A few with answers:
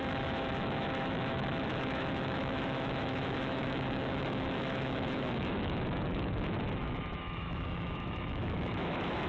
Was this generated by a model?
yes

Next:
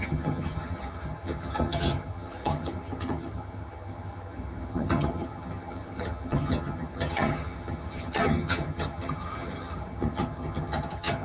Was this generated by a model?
yes